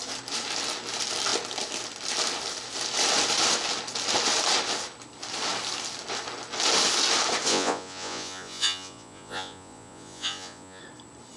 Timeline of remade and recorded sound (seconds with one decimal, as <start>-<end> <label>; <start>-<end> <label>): 0.0-7.5 recorded; 7.5-10.8 remade; 10.8-11.4 recorded